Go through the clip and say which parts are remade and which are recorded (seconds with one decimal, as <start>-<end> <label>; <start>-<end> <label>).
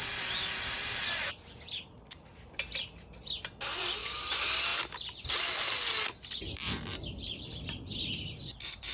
0.0-1.3 recorded; 1.3-2.3 remade; 2.3-3.8 recorded; 3.8-4.7 remade; 4.7-6.5 recorded; 6.5-8.9 remade